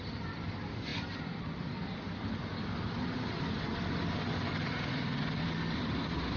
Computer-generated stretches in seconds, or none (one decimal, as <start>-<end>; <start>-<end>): none